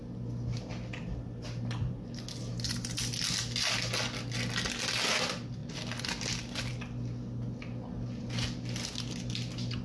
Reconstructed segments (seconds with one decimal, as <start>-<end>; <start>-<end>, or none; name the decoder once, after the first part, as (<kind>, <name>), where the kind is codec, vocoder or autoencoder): none